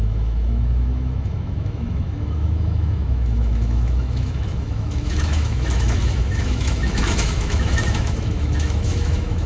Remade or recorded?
remade